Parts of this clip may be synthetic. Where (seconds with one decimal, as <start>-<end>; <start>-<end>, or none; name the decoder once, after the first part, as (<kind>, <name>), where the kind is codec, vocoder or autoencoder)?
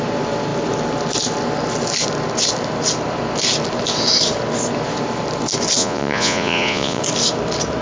5.8-7.0 (vocoder, Vocos)